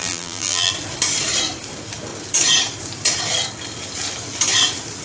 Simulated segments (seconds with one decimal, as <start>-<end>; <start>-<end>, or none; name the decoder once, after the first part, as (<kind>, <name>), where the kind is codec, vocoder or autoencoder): 0.0-0.7 (vocoder, BigVGAN v2)